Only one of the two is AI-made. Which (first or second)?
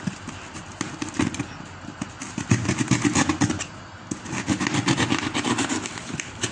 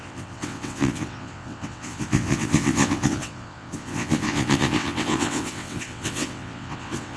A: second